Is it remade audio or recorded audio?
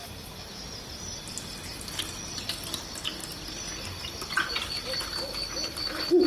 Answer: recorded